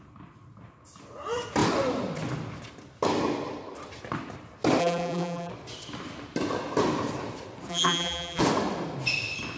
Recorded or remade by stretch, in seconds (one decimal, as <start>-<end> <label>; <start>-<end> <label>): 0.0-4.8 recorded; 4.8-5.5 remade; 5.5-7.7 recorded; 7.7-8.4 remade; 8.4-9.6 recorded